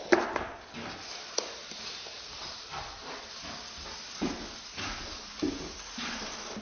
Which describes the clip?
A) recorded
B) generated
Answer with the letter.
A